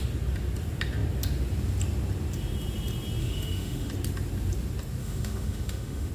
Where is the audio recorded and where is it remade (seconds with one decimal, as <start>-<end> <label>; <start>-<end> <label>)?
0.0-3.2 recorded; 3.2-3.9 remade; 3.9-5.0 recorded; 5.0-6.1 remade